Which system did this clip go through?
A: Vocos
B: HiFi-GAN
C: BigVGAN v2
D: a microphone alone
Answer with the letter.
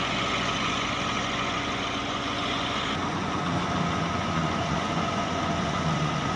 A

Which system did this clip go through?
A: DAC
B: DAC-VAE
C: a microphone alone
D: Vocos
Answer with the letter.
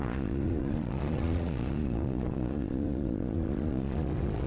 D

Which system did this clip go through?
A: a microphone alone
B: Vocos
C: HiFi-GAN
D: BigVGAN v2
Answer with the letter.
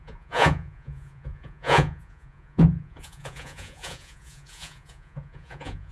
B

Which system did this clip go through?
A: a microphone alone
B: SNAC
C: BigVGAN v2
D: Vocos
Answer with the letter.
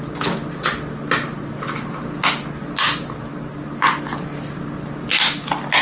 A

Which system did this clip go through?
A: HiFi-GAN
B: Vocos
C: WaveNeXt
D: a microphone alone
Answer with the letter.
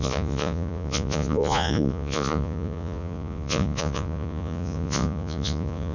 B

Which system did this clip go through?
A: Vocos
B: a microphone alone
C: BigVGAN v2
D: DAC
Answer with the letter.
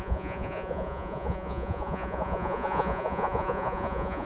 A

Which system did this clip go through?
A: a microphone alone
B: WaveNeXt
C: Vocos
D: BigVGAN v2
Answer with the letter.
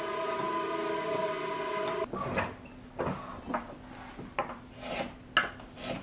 A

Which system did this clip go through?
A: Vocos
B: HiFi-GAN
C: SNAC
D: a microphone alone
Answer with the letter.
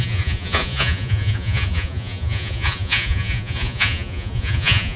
A